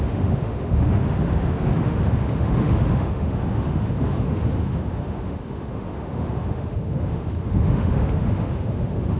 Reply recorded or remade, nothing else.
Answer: remade